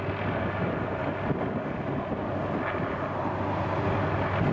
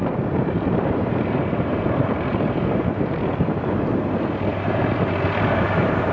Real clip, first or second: first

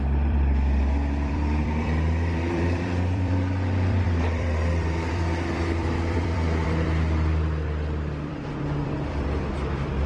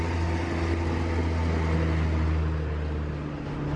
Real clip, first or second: second